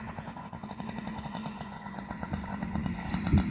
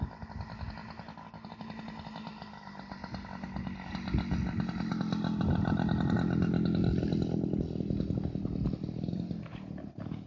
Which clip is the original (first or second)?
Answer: second